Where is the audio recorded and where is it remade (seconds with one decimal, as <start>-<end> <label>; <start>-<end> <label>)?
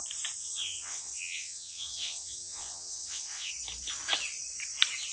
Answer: 0.0-0.4 recorded; 0.4-3.5 remade; 3.5-5.1 recorded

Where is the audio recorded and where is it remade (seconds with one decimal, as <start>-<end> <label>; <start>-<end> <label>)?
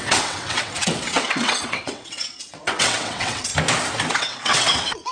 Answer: 0.0-3.5 remade; 3.5-4.1 recorded; 4.1-5.1 remade